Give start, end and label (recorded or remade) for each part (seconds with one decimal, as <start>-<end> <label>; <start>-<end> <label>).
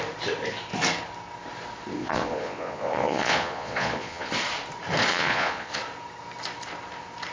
0.0-2.0 recorded; 2.0-4.3 remade; 4.3-5.1 recorded; 5.1-5.8 remade; 5.8-7.3 recorded